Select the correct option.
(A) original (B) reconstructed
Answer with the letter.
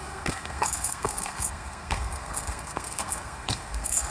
B